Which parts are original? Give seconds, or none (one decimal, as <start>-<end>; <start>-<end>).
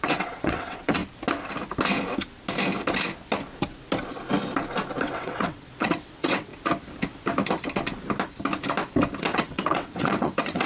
1.0-5.0; 6.5-9.2